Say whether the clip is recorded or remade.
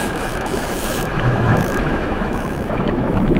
remade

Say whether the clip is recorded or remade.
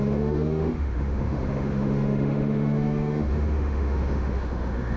remade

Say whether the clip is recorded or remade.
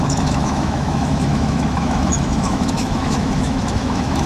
remade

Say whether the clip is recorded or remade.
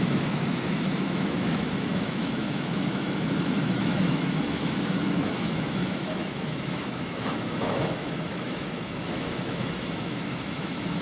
remade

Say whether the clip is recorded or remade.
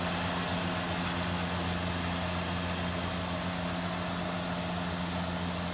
recorded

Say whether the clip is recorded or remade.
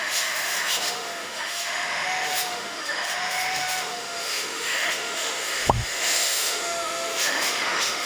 remade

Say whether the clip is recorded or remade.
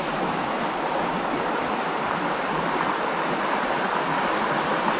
recorded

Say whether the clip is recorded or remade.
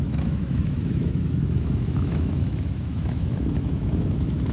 remade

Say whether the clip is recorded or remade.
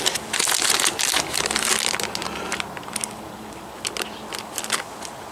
recorded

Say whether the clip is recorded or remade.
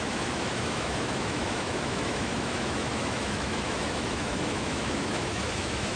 remade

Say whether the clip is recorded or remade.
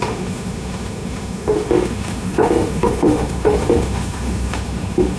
remade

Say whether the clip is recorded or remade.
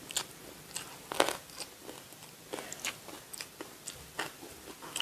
recorded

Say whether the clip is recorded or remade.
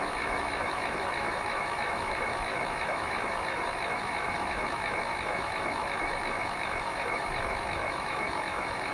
remade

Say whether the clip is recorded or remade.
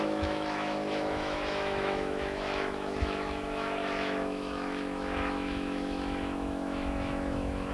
remade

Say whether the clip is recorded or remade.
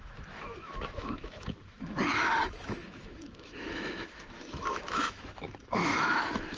remade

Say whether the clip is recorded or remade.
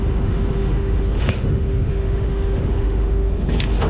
remade